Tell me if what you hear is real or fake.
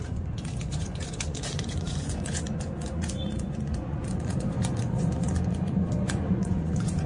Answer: fake